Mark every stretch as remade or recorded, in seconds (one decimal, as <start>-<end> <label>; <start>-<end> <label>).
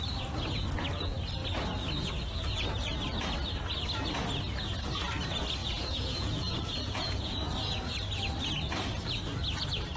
0.0-5.6 recorded; 5.6-7.9 remade; 7.9-10.0 recorded